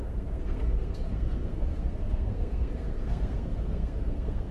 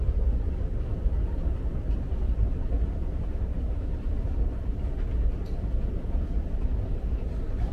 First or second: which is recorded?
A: second